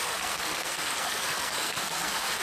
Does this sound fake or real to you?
fake